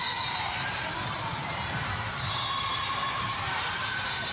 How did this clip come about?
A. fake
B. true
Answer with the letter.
A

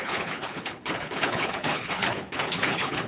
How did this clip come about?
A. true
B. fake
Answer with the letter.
B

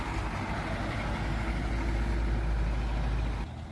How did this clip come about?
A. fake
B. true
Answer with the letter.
B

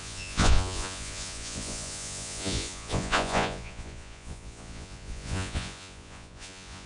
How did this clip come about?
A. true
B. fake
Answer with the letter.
B